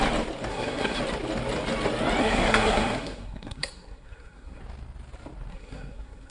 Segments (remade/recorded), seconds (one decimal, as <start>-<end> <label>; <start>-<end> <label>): 0.0-0.5 recorded; 0.5-1.0 remade; 1.0-2.2 recorded; 2.2-4.6 remade; 4.6-5.5 recorded; 5.5-6.3 remade